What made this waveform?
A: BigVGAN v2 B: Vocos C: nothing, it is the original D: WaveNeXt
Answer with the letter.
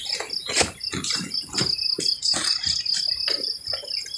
C